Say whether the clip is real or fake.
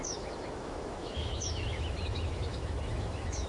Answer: fake